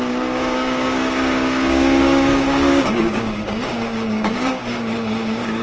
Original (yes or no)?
no